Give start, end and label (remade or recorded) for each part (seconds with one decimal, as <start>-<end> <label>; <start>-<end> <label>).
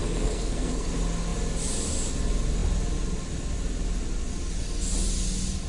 0.0-0.9 remade; 0.9-5.7 recorded